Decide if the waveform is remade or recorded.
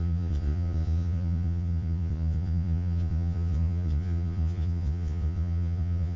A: remade